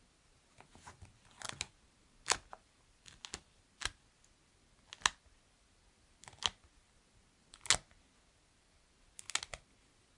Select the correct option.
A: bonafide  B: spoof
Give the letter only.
A